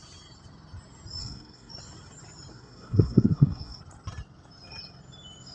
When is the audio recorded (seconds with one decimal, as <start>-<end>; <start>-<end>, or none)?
0.0-1.2; 1.7-2.5; 3.8-5.5